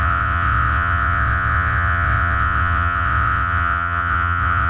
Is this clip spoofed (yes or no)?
yes